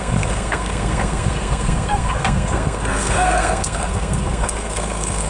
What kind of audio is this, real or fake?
fake